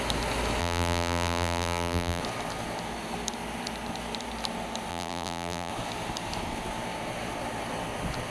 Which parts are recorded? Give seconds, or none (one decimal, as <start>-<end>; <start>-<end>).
0.0-0.6; 2.2-4.9; 5.7-8.3